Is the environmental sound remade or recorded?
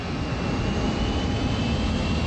recorded